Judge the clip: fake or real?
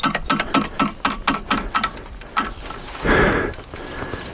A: real